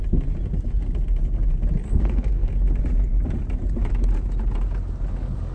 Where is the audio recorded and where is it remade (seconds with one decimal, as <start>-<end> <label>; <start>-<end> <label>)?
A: 0.0-1.8 recorded; 1.8-2.5 remade; 2.5-5.5 recorded